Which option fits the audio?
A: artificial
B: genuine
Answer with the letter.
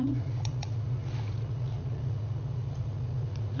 A